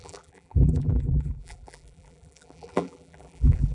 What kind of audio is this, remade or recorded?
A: remade